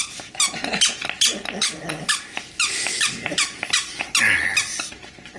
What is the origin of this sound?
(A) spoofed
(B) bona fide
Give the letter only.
B